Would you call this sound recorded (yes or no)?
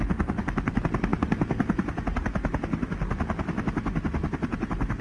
yes